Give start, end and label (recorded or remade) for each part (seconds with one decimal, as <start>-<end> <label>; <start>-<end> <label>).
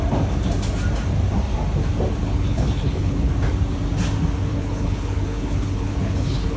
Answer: 0.0-2.2 recorded; 2.2-3.3 remade; 3.3-4.5 recorded; 4.5-6.6 remade